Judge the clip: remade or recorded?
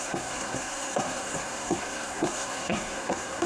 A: remade